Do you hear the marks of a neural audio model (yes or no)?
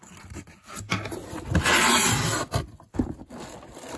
no